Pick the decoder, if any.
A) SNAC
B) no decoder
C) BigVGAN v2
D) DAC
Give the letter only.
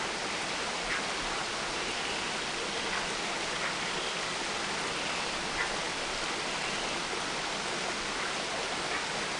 B